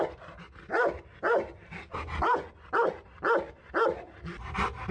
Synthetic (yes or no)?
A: no